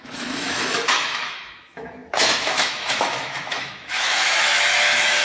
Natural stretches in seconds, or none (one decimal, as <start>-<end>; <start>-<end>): none